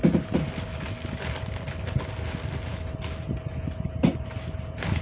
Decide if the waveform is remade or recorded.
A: recorded